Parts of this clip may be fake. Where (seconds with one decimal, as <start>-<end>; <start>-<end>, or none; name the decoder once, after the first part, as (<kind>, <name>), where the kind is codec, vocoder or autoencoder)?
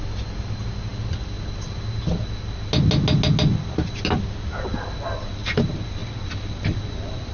none